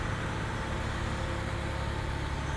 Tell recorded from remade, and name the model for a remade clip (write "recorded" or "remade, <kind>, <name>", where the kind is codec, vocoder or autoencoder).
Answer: recorded